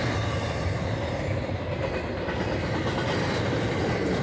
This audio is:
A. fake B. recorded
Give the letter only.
B